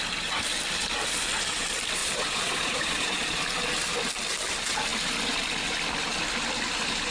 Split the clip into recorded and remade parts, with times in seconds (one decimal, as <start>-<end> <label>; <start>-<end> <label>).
0.0-2.0 recorded; 2.0-3.4 remade; 3.4-7.1 recorded